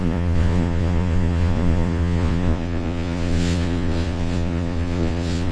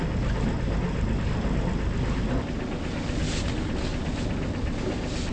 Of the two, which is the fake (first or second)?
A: first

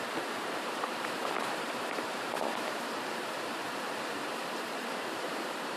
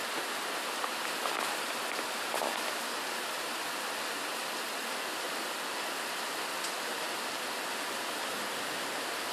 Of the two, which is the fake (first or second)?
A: first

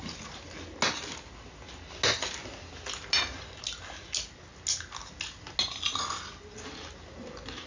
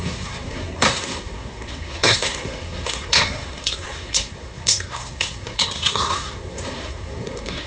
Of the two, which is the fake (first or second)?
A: second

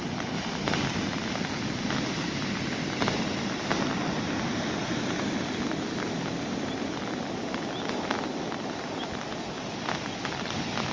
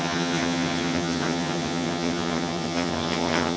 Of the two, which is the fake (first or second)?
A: second